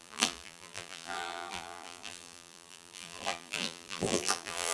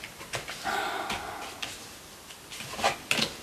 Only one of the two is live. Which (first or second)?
second